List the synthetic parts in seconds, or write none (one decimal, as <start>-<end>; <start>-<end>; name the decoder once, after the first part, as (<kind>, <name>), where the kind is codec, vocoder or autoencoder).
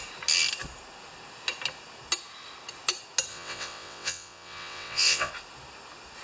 3.3-5.3 (vocoder, WaveNeXt)